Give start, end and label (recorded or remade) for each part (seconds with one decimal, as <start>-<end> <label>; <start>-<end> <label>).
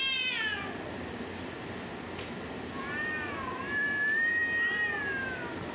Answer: 0.0-5.7 recorded